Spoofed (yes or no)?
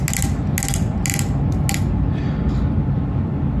no